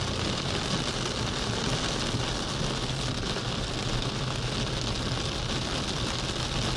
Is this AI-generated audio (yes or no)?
no